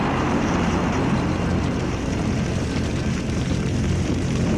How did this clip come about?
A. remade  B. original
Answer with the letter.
A